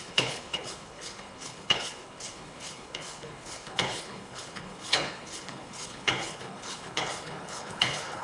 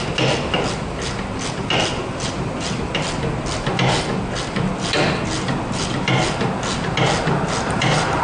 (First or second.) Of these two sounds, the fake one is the first